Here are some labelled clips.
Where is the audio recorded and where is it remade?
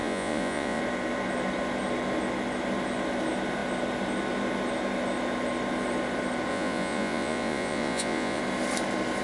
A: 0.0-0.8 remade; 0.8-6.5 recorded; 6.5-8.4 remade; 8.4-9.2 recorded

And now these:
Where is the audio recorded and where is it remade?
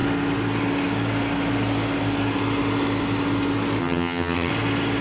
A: 0.0-3.8 recorded; 3.8-4.5 remade; 4.5-5.0 recorded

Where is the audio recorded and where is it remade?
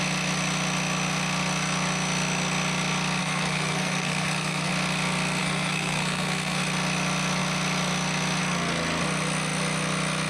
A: 0.0-3.2 recorded; 3.2-4.7 remade; 4.7-5.4 recorded; 5.4-6.6 remade; 6.6-10.3 recorded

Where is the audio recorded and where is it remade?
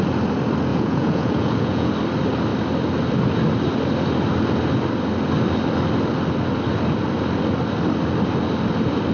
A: 0.0-0.7 recorded; 0.7-1.9 remade; 1.9-9.1 recorded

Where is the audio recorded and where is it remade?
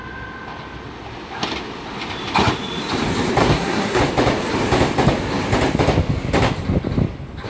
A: 0.0-3.4 recorded; 3.4-4.0 remade; 4.0-7.5 recorded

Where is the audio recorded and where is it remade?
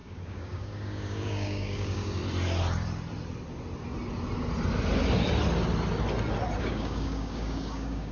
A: 0.0-2.2 remade; 2.2-6.6 recorded; 6.6-8.1 remade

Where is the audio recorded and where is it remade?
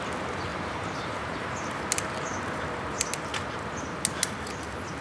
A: 0.0-0.5 recorded; 0.5-1.9 remade; 1.9-5.0 recorded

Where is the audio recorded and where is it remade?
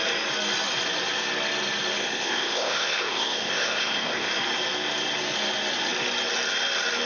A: 0.0-2.0 recorded; 2.0-4.3 remade; 4.3-7.1 recorded